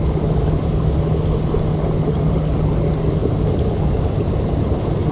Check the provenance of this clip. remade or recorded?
recorded